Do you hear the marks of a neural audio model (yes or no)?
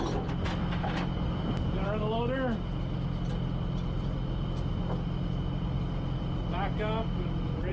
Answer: no